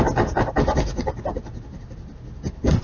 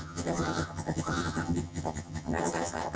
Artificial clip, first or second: second